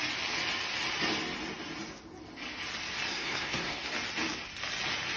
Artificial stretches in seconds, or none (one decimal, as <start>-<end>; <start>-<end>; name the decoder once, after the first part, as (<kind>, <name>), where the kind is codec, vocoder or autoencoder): 3.1-3.9 (codec, SNAC)